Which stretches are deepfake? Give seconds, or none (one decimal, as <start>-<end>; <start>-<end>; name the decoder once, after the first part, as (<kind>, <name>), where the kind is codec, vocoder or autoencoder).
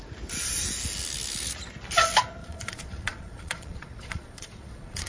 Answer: 2.4-5.1 (vocoder, Vocos)